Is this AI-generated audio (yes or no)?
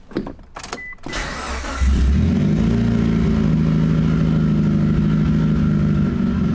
no